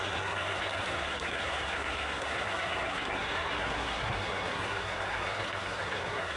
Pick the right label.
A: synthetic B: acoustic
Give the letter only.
A